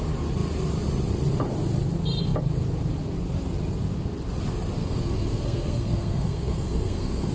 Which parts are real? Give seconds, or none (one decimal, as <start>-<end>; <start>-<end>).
0.0-4.8